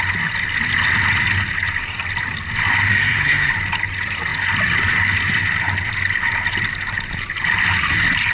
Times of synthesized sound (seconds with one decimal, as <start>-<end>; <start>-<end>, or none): 2.9-3.5